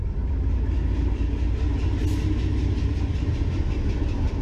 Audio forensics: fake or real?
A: real